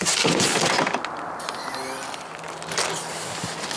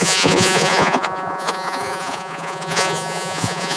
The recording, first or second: first